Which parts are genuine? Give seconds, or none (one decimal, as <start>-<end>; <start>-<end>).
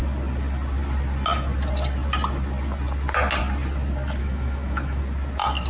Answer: 0.0-4.2; 5.0-5.7